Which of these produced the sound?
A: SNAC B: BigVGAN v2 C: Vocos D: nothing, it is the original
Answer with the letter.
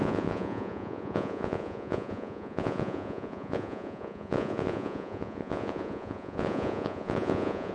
C